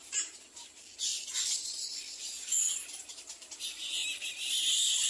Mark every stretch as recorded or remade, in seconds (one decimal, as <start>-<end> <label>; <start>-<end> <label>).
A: 0.0-5.1 recorded